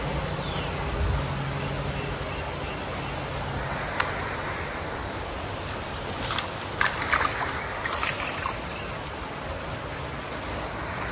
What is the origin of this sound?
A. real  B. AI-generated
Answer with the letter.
A